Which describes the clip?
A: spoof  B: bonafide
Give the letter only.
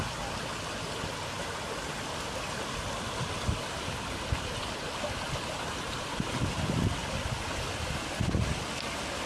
B